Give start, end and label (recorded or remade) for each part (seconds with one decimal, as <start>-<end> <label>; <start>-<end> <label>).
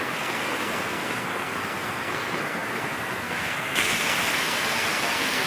0.0-5.5 remade